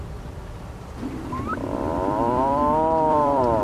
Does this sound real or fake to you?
fake